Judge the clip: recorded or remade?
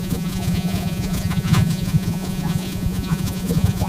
remade